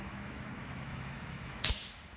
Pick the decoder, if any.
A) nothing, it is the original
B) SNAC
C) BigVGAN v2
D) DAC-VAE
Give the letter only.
D